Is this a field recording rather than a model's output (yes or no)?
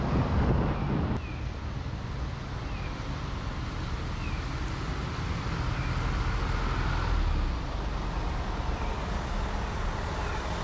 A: yes